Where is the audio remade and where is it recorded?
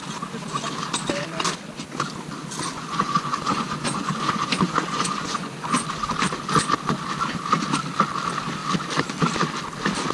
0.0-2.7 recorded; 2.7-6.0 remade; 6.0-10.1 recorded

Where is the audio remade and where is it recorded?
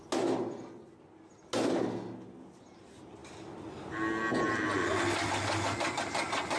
0.0-6.6 recorded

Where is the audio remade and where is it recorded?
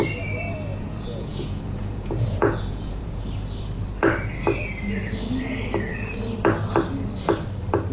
0.0-0.7 recorded; 0.7-3.2 remade; 3.2-7.9 recorded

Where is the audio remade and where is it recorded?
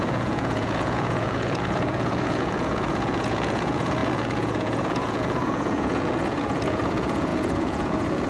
0.0-8.3 remade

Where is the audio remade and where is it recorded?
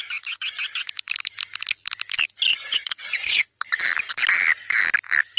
0.0-2.5 recorded; 2.5-3.8 remade; 3.8-5.4 recorded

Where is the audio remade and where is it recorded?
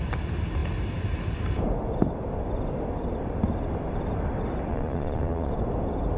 0.0-4.7 recorded; 4.7-5.5 remade; 5.5-6.2 recorded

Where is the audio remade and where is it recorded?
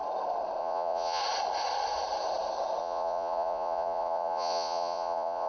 0.0-0.6 recorded; 0.6-1.2 remade; 1.2-2.8 recorded; 2.8-5.5 remade